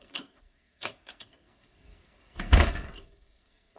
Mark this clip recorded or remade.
remade